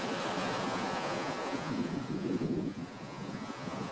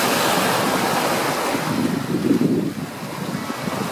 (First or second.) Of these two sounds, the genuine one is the second